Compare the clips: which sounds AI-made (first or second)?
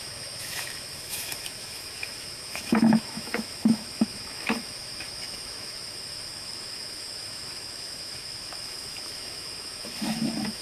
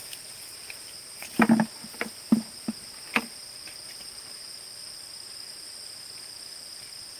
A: first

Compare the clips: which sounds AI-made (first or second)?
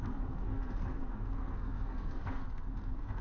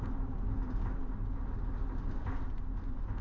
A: first